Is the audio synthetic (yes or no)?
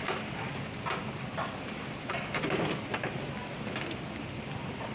no